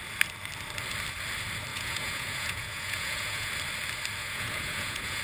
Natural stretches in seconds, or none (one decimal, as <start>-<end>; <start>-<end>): 0.0-1.7; 3.5-4.2